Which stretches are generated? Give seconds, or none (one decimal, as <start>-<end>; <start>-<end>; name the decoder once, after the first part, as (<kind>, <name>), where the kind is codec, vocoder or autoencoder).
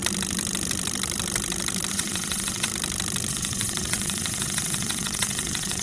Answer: 1.9-2.7 (vocoder, WaveNeXt); 3.3-5.8